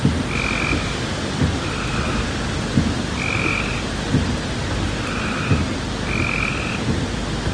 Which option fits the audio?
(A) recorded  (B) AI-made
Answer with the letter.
A